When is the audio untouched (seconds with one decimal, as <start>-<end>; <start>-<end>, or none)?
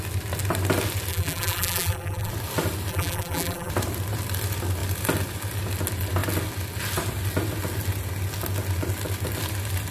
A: 0.0-1.1; 2.3-2.9; 3.7-9.9